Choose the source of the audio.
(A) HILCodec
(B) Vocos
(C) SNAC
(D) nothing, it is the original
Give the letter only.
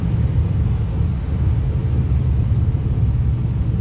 D